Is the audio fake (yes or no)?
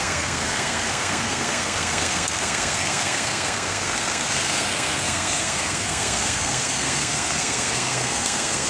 yes